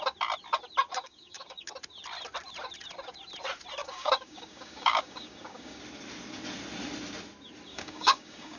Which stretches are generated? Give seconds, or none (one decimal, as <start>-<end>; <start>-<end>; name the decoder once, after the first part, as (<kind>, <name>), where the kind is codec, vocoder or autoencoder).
1.0-1.6 (codec, DAC); 3.8-5.8; 7.7-8.6